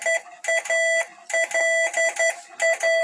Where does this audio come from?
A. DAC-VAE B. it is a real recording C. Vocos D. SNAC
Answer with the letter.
B